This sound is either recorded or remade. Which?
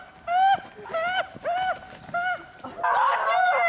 recorded